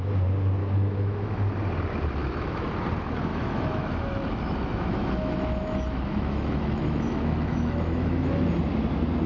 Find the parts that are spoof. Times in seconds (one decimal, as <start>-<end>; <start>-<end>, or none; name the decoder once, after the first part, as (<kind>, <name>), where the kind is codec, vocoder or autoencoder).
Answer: 0.6-1.4 (autoencoder, DAC-VAE); 2.2-2.7; 3.3-8.5